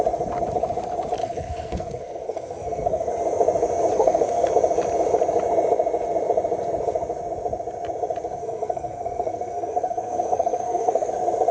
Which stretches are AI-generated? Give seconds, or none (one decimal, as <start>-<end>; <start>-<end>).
1.2-3.1; 3.9-4.5; 8.4-11.1